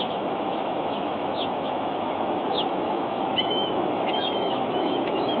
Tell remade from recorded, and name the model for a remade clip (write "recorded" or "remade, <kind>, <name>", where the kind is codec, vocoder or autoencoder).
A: remade, autoencoder, DAC-VAE